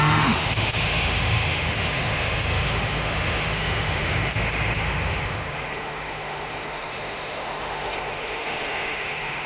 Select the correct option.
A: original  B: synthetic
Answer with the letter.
B